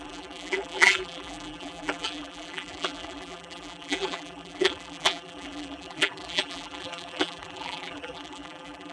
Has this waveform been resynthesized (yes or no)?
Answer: yes